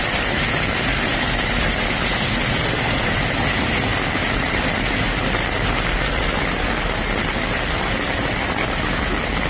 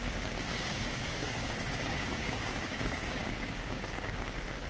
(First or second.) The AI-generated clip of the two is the second